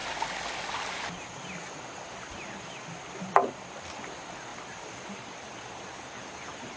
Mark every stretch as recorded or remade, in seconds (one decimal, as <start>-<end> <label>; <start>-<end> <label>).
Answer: 0.0-6.8 recorded